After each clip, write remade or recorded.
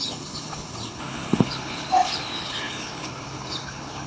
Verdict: remade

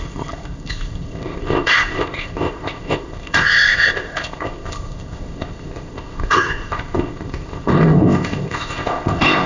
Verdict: remade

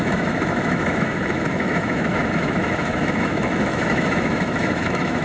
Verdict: remade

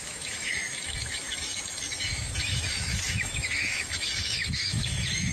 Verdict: remade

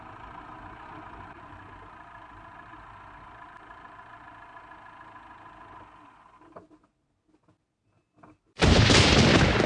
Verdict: recorded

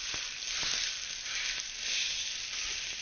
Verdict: recorded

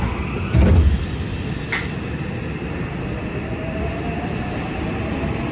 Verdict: recorded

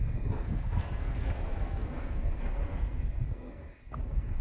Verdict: remade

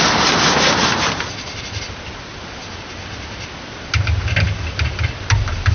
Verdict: recorded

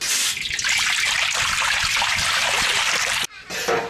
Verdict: recorded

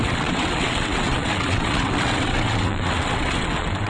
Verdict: remade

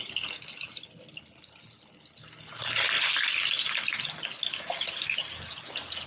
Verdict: recorded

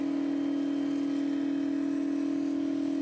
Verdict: recorded